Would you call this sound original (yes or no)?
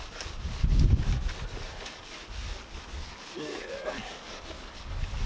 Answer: no